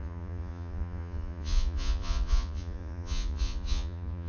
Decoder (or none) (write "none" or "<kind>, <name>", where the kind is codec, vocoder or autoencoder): vocoder, Vocos